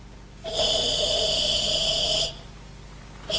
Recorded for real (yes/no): yes